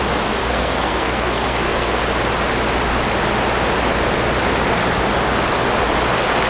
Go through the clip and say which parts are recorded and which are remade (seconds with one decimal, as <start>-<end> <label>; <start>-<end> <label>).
0.0-0.4 recorded; 0.4-2.0 remade; 2.0-6.5 recorded